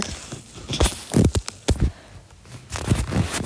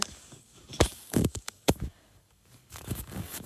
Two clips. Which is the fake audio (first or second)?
second